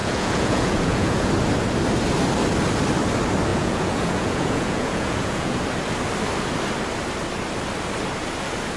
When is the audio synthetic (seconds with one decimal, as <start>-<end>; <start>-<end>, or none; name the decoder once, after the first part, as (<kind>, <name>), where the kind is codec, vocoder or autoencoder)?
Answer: 0.0-1.3 (vocoder, Vocos); 3.5-5.6